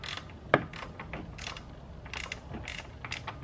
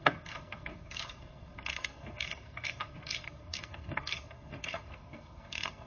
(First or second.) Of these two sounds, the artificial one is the second